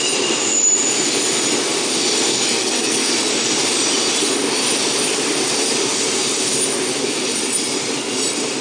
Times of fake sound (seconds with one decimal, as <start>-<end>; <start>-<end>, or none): 2.3-3.1